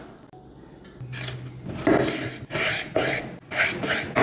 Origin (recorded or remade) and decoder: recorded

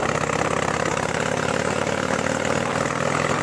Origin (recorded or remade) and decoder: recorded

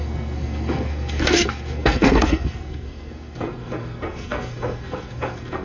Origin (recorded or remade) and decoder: remade, codec, SNAC